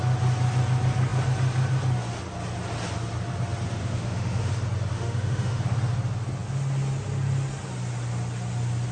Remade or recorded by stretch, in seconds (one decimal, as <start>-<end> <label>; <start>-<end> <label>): 0.0-3.8 recorded; 3.8-4.5 remade; 4.5-4.9 recorded; 4.9-5.6 remade; 5.6-8.9 recorded